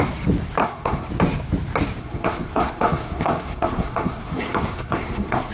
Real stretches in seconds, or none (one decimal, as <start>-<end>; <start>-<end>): 0.0-0.6; 1.1-2.0

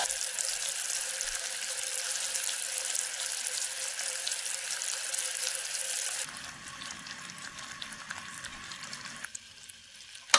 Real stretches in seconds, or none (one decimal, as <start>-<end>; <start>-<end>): none

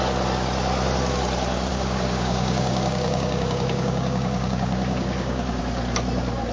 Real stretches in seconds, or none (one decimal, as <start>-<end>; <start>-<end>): 0.0-1.7; 5.6-6.5

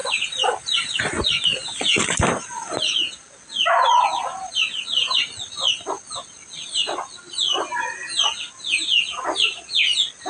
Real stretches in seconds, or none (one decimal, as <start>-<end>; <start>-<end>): 1.0-10.3

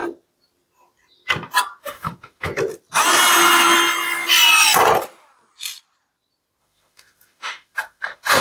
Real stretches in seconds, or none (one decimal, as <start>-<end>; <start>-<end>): 0.0-1.8; 2.5-6.6

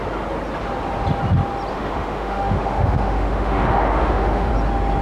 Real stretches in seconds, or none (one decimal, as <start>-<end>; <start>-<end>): 0.0-1.7; 4.5-5.0

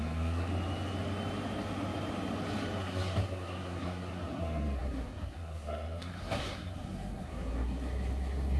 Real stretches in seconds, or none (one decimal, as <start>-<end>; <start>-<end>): 0.5-2.8

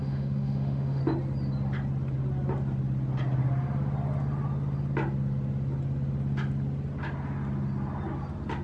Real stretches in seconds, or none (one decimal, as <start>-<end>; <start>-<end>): 1.0-8.6